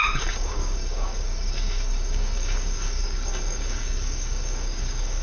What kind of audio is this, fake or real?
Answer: fake